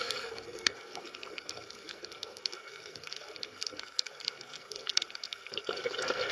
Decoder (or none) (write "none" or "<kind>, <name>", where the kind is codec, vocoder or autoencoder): codec, SNAC